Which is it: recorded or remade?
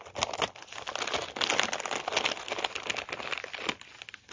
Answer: recorded